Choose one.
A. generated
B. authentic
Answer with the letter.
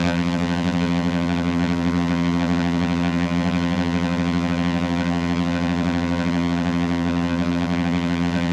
A